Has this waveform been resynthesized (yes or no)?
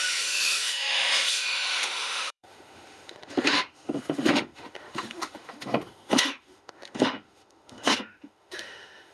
yes